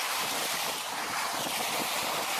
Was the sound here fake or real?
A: real